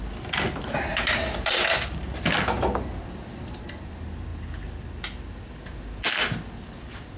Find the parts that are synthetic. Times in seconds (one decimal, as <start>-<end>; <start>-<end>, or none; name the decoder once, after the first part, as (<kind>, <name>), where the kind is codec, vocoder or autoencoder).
none